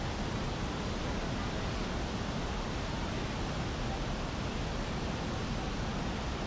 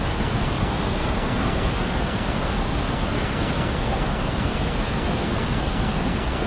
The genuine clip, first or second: first